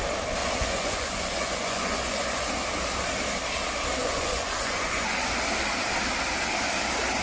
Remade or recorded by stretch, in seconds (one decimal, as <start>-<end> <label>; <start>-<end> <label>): 0.0-0.4 recorded; 0.4-2.5 remade; 2.5-4.0 recorded; 4.0-5.3 remade; 5.3-7.2 recorded